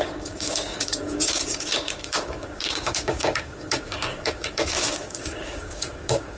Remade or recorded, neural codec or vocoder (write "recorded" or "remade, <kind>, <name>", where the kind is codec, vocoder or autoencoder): remade, codec, DAC